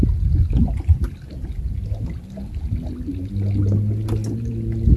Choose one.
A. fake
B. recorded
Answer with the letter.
B